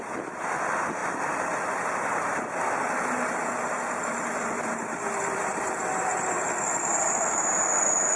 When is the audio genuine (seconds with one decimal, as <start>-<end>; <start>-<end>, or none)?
0.0-8.2